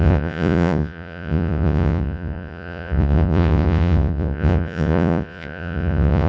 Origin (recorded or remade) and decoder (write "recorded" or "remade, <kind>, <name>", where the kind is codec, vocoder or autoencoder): remade, vocoder, Vocos